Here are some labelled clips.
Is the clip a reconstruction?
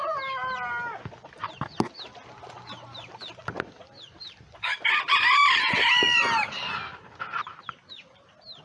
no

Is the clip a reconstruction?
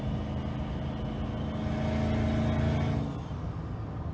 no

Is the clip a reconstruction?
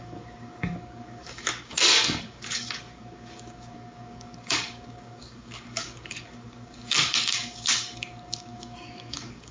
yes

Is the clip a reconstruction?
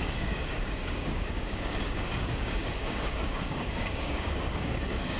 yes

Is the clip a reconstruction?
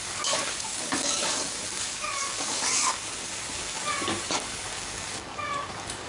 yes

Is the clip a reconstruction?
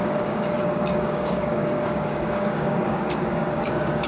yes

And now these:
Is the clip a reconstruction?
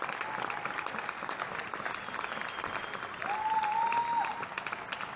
no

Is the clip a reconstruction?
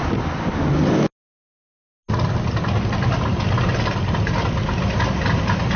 no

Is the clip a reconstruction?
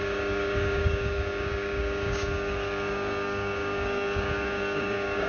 yes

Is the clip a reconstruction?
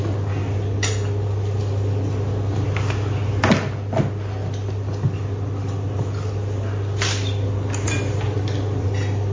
no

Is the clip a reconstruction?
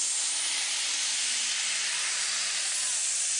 no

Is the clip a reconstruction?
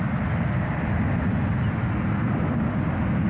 no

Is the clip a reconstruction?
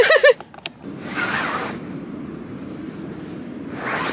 no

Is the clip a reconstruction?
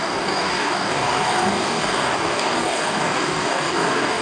yes